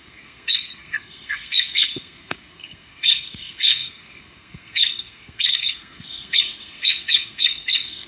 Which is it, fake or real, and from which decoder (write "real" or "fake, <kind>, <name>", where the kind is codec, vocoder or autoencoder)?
fake, codec, SNAC